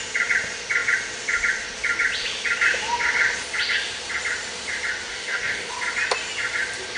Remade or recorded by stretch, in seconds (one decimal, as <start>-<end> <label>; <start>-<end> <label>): 0.0-5.1 recorded; 5.1-5.7 remade; 5.7-7.0 recorded